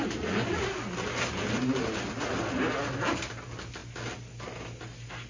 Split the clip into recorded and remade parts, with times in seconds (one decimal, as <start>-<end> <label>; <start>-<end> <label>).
0.0-5.3 recorded